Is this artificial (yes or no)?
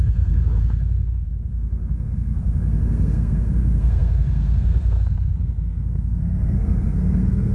yes